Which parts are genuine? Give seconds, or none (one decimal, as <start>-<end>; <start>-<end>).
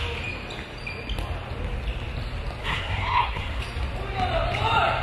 0.0-2.6; 3.6-5.0